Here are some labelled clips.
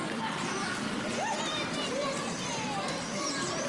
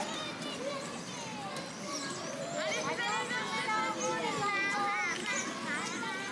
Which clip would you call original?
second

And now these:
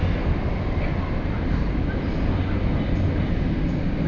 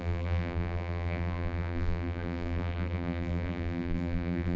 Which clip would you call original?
first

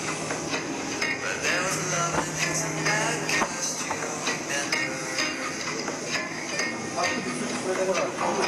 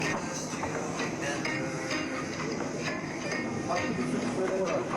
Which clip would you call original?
first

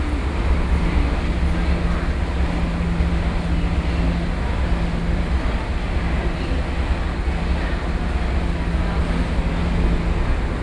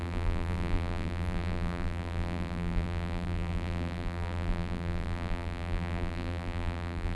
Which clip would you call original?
first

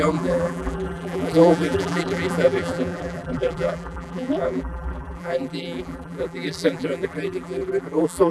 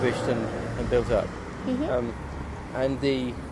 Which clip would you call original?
second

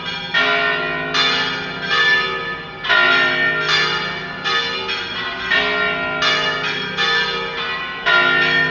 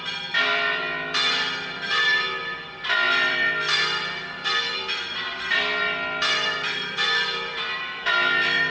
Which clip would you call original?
first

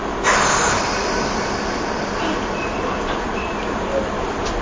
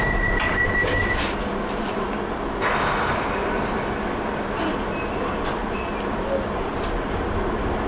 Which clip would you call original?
second